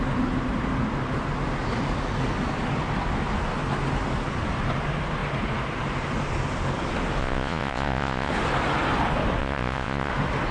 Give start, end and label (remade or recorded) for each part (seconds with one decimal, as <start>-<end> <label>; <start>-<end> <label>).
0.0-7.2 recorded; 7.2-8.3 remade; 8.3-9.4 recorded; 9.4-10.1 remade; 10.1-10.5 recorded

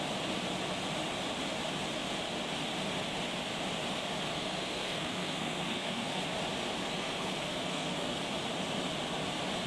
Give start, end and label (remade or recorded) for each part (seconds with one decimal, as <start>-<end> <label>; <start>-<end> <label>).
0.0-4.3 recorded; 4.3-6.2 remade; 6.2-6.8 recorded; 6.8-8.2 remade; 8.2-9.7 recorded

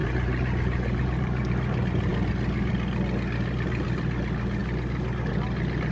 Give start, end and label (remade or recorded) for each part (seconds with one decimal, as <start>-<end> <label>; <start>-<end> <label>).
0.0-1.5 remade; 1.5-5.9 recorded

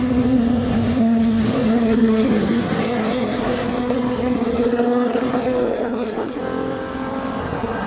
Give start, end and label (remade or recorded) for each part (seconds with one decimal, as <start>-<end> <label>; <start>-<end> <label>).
0.0-6.4 remade; 6.4-7.4 recorded; 7.4-7.9 remade

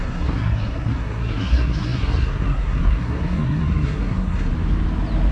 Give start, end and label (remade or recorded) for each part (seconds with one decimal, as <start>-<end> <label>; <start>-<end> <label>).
0.0-4.5 remade; 4.5-5.3 recorded

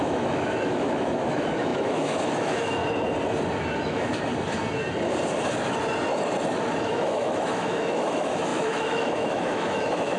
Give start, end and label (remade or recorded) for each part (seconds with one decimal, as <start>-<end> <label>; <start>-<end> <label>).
0.0-2.8 remade; 2.8-3.8 recorded; 3.8-4.3 remade; 4.3-6.8 recorded; 6.8-10.2 remade

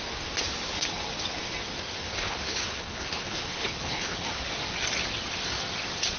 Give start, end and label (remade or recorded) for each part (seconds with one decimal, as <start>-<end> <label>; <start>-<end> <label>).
0.0-2.0 recorded; 2.0-4.3 remade; 4.3-6.2 recorded